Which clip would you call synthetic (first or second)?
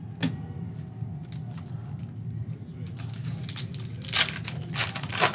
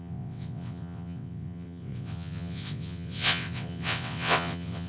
second